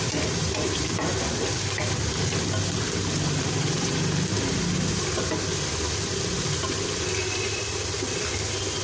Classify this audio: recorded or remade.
recorded